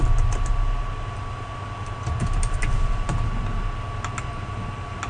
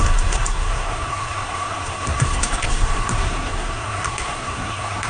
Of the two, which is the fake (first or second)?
second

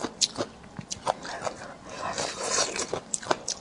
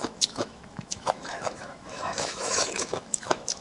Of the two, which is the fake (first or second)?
second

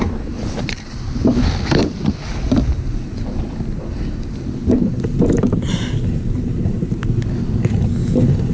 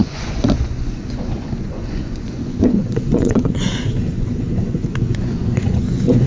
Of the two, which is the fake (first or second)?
second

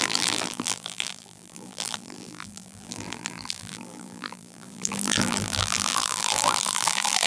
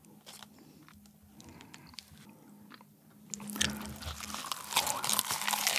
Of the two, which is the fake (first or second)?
first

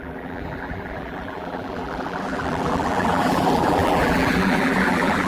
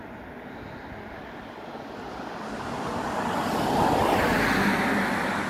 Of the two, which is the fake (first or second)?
first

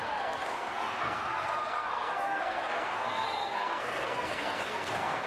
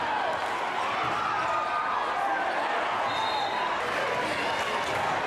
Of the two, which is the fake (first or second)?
first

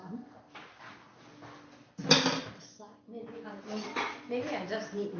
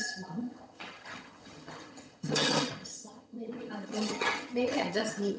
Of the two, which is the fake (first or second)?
second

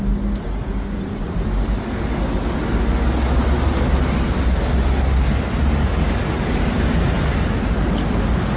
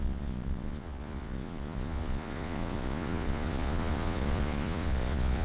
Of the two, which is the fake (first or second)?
second